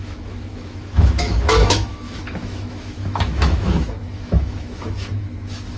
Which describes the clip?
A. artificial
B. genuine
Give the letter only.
A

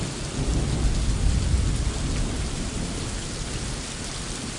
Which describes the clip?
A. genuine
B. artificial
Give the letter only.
A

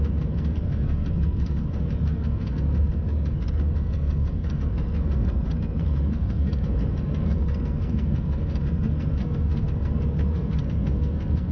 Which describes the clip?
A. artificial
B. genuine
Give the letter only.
A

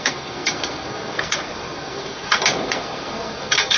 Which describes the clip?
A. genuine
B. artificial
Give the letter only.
B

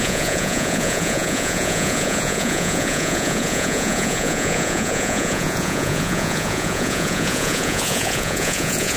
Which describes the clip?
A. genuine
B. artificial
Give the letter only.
B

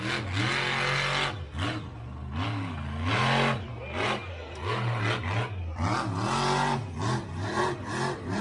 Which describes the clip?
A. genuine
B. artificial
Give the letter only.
A